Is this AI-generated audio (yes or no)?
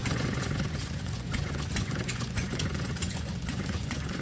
yes